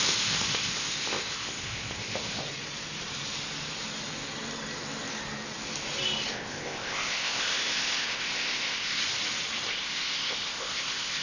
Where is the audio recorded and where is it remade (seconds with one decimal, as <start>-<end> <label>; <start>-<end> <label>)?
0.0-2.4 remade; 2.4-6.3 recorded; 6.3-9.0 remade; 9.0-9.7 recorded; 9.7-11.2 remade